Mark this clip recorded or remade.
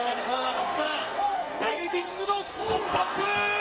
remade